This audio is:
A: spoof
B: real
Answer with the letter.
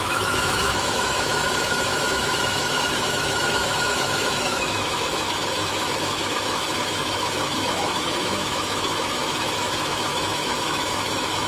A